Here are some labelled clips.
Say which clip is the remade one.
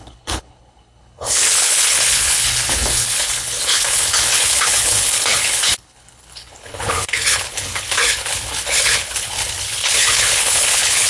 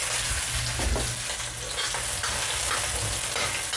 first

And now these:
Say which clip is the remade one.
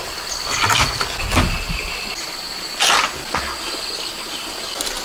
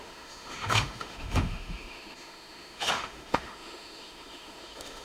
second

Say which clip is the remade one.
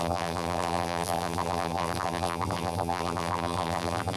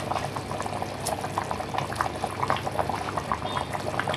first